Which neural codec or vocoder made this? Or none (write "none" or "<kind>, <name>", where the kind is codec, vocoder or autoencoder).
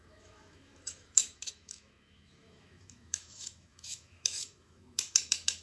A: autoencoder, DAC-VAE